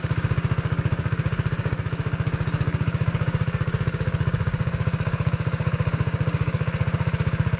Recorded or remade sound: remade